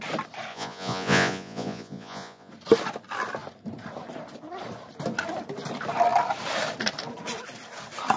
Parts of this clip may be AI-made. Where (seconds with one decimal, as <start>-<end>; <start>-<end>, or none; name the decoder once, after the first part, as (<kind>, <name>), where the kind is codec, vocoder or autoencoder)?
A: 0.5-2.5 (vocoder, Vocos)

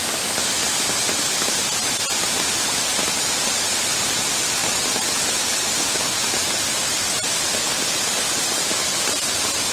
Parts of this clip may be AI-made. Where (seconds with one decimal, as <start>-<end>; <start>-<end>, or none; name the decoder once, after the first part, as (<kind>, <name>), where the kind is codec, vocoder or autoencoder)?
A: none

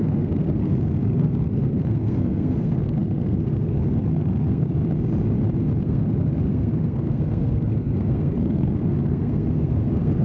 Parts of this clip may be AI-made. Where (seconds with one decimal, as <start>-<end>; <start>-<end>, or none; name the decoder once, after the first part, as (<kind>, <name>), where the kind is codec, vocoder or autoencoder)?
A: 0.0-4.8 (codec, SNAC); 5.8-10.2